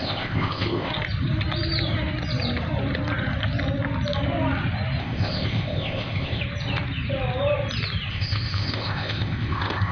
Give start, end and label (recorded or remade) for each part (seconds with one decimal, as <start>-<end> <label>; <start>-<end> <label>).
0.0-0.9 remade; 0.9-5.0 recorded; 5.0-6.4 remade; 6.4-8.1 recorded; 8.1-9.9 remade